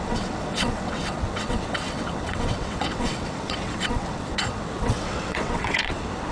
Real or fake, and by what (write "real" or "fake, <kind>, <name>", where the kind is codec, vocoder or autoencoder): fake, vocoder, WaveNeXt